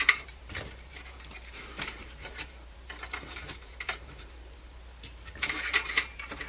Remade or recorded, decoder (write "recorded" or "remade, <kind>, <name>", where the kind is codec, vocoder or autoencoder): remade, vocoder, BigVGAN v2